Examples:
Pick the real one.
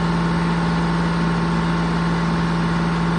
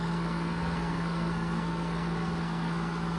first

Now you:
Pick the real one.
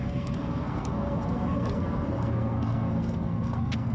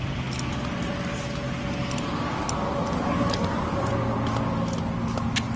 second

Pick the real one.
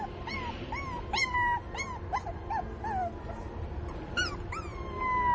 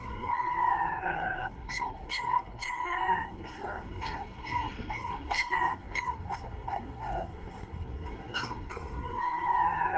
first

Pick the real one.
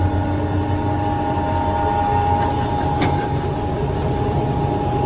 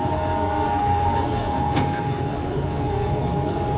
first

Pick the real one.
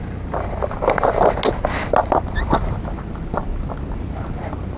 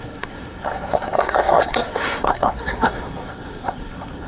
first